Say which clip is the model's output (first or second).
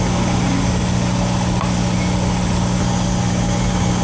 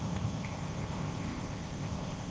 second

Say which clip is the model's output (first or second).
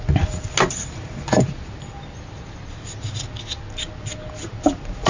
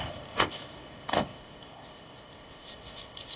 second